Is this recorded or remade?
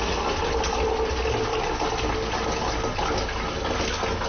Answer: recorded